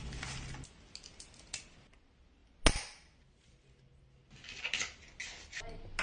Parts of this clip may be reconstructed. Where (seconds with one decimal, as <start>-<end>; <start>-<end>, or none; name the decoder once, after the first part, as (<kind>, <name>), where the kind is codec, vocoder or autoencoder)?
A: none